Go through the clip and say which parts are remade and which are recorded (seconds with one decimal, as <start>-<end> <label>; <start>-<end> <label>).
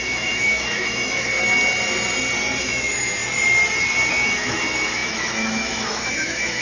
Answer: 0.0-1.3 remade; 1.3-2.6 recorded; 2.6-3.2 remade; 3.2-4.1 recorded; 4.1-6.6 remade